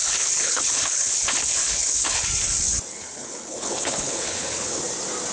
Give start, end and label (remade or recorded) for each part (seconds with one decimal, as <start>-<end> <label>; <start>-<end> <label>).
0.0-2.3 remade; 2.3-2.9 recorded; 2.9-4.8 remade; 4.8-5.3 recorded